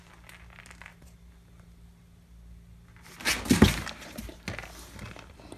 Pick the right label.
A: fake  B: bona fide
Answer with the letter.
B